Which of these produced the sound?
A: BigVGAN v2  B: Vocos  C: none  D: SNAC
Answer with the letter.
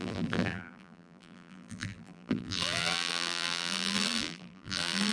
A